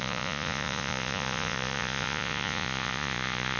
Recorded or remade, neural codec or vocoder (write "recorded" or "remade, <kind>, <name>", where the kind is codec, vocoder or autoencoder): remade, vocoder, Vocos